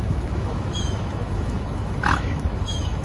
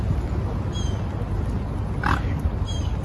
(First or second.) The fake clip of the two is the first